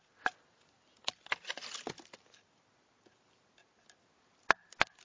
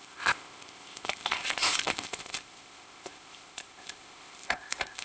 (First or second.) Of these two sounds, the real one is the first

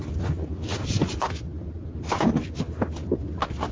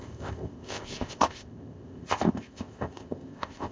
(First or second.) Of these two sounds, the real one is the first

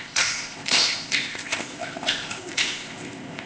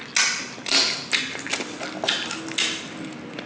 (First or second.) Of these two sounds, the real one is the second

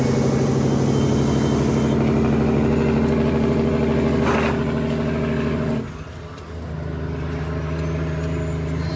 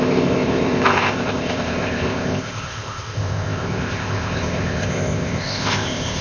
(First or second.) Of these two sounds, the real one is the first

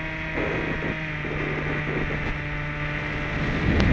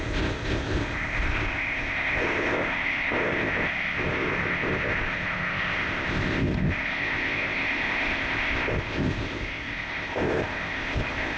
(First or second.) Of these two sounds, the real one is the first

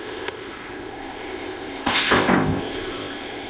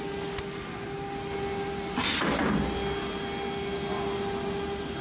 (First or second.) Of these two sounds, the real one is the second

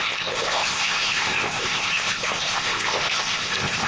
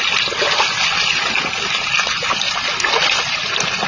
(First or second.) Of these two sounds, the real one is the second